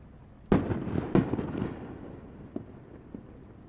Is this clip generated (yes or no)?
no